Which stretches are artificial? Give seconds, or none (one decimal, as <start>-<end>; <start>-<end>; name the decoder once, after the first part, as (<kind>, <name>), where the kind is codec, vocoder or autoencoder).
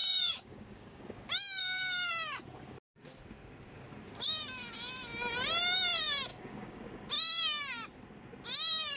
0.0-1.0 (codec, DAC); 1.6-2.1; 6.3-6.8